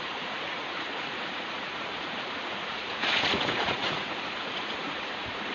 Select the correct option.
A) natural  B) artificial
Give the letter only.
B